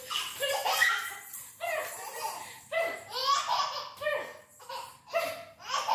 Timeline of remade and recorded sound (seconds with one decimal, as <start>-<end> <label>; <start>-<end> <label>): 0.0-1.4 remade; 1.4-2.1 recorded; 2.1-3.2 remade; 3.2-5.9 recorded